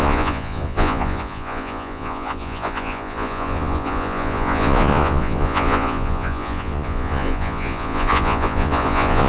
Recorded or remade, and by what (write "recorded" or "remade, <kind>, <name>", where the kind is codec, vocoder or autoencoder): remade, vocoder, Vocos